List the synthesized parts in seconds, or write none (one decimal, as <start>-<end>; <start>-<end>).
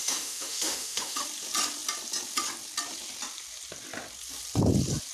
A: 0.0-1.2